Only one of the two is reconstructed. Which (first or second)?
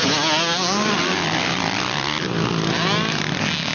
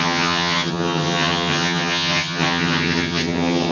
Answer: second